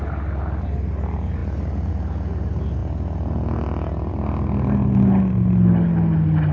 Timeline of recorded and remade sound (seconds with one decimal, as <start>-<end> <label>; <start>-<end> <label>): 0.0-6.5 recorded